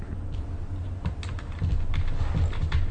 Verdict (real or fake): real